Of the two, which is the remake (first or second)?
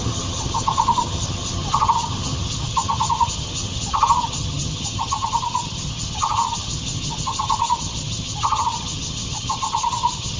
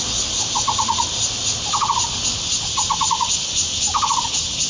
first